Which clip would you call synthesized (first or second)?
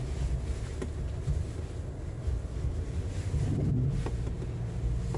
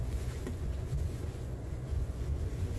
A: second